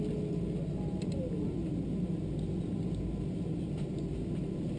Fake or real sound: real